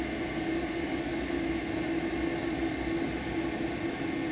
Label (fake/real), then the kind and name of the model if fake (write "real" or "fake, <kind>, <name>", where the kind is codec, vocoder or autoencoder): real